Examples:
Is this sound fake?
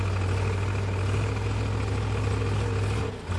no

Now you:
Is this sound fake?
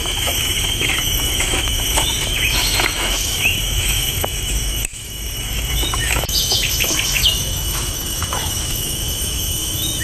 yes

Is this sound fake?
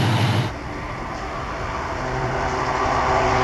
no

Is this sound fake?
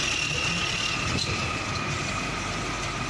no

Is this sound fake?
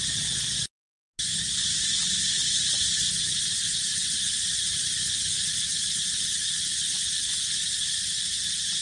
no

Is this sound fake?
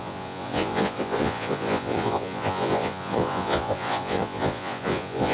yes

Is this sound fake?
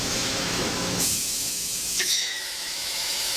yes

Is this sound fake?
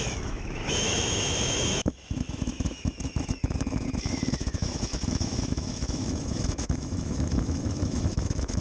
yes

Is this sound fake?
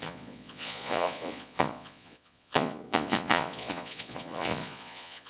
yes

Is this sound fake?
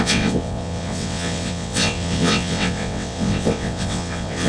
yes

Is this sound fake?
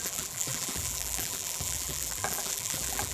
yes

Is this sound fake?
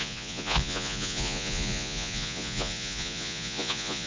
yes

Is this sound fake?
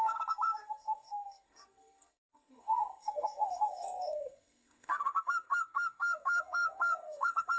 yes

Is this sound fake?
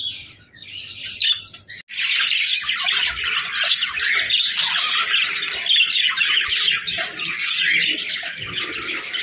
no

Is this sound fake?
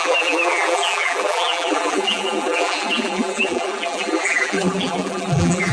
yes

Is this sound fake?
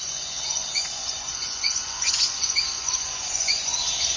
yes